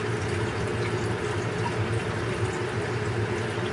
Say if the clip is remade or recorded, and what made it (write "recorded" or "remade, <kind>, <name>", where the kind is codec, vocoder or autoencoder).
recorded